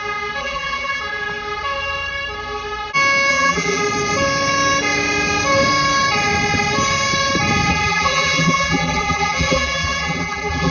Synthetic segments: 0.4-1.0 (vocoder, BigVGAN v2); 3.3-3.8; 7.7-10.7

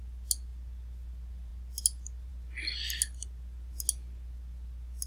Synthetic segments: none

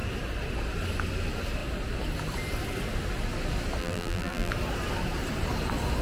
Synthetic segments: 3.8-4.5 (vocoder, BigVGAN v2)

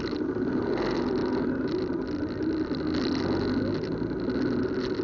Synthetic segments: none

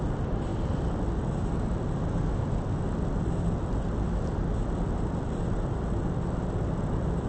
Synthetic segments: none

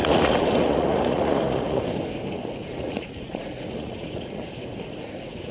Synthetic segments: 0.0-1.8 (vocoder, Vocos); 2.6-5.5

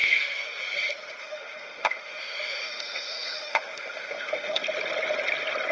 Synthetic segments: 0.0-0.6 (autoencoder, DAC-VAE); 1.2-4.6

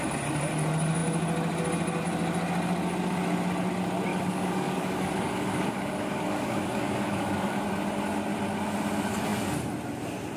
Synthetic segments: 4.1-7.6 (codec, DAC)